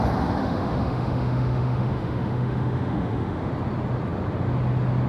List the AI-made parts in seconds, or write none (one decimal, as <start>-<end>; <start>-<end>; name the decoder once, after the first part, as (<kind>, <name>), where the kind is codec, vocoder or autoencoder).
0.4-3.5 (autoencoder, DAC-VAE)